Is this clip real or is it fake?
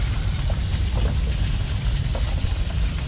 real